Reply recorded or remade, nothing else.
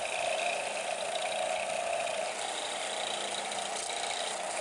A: recorded